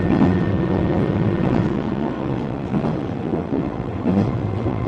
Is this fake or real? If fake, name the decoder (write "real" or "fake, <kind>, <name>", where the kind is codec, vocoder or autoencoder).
fake, vocoder, WaveNeXt